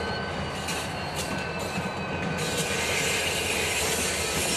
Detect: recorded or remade recorded